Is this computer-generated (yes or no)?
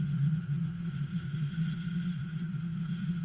yes